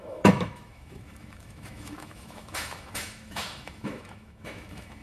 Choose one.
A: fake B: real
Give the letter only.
A